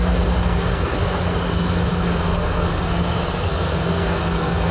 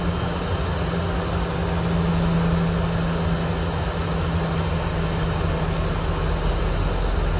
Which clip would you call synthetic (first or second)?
first